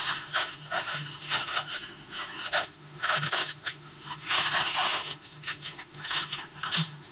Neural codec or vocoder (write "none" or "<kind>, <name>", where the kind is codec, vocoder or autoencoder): autoencoder, DAC-VAE